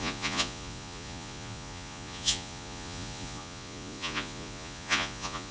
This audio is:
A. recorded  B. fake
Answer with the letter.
B